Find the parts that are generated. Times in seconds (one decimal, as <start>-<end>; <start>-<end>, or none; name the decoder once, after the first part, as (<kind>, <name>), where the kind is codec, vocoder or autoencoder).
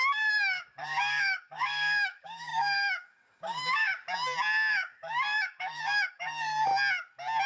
0.0-3.9 (codec, DAC); 4.7-6.7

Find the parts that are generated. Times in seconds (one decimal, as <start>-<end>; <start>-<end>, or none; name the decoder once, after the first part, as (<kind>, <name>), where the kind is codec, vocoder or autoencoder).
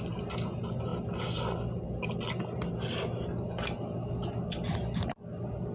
none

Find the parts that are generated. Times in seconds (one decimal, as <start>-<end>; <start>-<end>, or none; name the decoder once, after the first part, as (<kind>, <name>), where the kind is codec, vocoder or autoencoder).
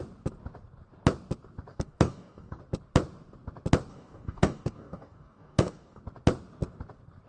1.7-2.6 (codec, DAC); 3.9-6.0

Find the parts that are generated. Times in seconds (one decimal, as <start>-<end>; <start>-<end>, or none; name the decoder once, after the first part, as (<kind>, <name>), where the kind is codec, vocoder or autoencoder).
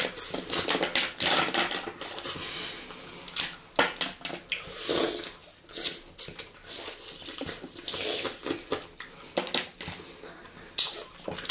none